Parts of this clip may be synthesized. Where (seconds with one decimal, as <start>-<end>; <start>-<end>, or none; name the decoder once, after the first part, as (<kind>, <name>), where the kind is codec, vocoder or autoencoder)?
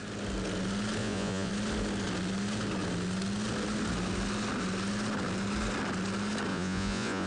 1.0-1.5 (vocoder, Vocos); 6.5-7.3